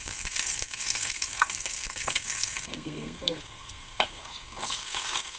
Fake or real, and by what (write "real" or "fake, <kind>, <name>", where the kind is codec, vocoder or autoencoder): fake, codec, SNAC